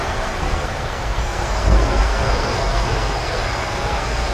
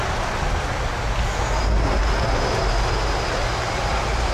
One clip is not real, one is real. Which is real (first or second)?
second